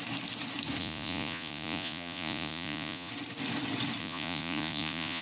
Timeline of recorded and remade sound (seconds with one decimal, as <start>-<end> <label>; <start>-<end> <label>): 0.0-0.8 recorded; 0.8-3.1 remade; 3.1-4.0 recorded; 4.0-5.2 remade